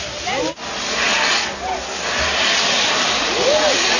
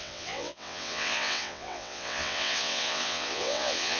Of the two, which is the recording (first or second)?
first